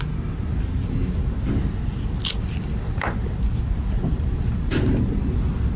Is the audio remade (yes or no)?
no